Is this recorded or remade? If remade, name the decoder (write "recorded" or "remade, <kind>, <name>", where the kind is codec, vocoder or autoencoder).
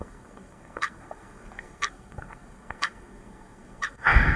remade, codec, SNAC